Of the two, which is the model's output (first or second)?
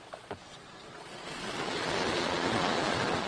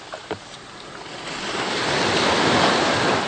first